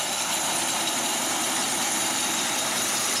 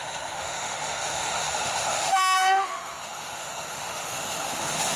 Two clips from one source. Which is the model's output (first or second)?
second